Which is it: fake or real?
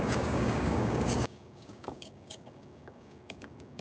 fake